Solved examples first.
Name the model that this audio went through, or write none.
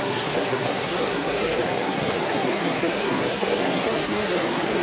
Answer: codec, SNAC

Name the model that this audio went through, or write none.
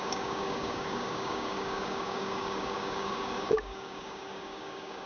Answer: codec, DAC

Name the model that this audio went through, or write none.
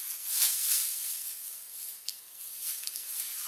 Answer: codec, SNAC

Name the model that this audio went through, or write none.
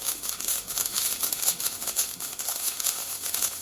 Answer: autoencoder, DAC-VAE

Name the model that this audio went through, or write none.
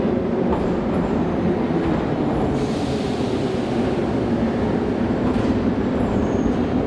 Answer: vocoder, BigVGAN v2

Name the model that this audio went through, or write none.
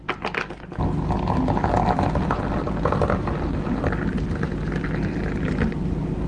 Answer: none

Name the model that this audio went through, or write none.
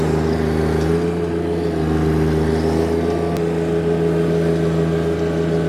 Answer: none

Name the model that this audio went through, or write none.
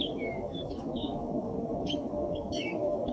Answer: codec, DAC